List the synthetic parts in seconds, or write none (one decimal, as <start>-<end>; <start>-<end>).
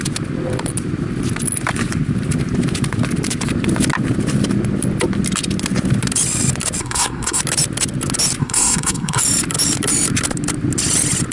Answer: 6.8-7.4; 8.4-9.2